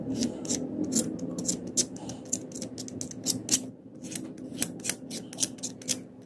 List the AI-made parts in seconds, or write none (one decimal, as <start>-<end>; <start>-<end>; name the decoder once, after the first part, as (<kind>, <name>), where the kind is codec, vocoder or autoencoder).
none

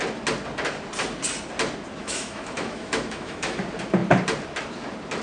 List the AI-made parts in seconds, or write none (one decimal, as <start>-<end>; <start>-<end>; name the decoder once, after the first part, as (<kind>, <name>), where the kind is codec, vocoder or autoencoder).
2.0-3.6 (autoencoder, DAC-VAE)

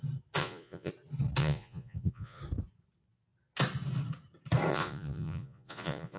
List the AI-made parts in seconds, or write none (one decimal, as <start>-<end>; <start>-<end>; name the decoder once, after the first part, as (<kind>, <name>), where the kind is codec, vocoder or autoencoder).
0.4-0.9 (vocoder, Vocos); 1.4-2.4; 4.7-6.2

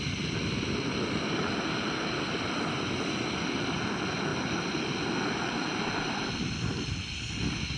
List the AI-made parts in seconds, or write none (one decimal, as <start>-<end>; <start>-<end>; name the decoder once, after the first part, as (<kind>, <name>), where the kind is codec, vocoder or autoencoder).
none

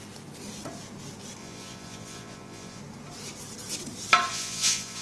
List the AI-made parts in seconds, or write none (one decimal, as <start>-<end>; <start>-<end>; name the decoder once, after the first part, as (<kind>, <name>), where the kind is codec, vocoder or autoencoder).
1.4-2.8 (vocoder, Vocos); 4.3-5.0

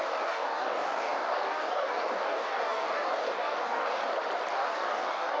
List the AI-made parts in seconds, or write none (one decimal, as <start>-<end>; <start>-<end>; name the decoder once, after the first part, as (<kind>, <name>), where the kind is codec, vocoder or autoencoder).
0.0-4.0 (codec, DAC); 4.5-5.4

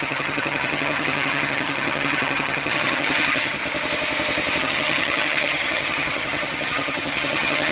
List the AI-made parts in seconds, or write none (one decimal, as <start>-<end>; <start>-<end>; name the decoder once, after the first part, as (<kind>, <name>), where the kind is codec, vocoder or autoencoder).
0.0-3.6 (vocoder, HiFi-GAN); 4.6-7.7